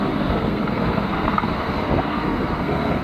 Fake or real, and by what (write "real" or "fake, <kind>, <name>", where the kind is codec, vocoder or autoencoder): fake, codec, SNAC